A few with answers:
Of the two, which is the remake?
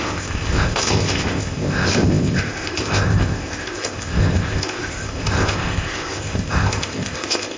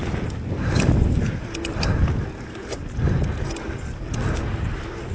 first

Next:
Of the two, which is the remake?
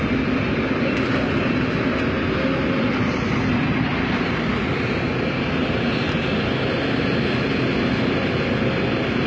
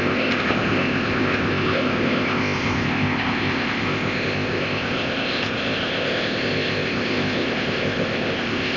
second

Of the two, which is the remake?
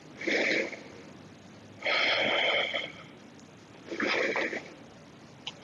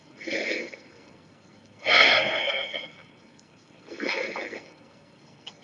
second